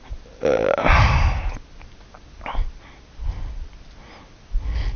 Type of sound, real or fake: real